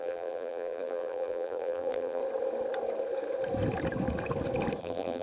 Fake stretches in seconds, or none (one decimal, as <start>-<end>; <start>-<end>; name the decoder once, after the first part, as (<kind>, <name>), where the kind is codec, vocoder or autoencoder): 0.0-2.2 (vocoder, BigVGAN v2); 4.8-5.2